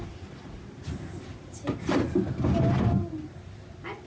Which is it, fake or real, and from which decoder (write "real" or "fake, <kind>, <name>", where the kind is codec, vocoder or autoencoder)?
real